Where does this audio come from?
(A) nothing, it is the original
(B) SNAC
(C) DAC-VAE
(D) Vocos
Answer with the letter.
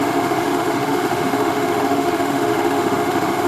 C